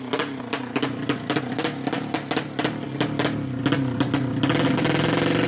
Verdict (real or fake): real